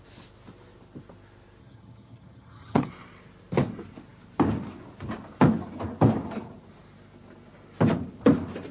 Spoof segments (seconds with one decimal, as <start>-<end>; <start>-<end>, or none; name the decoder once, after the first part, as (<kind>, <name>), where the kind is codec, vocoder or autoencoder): 1.6-2.9 (vocoder, HiFi-GAN)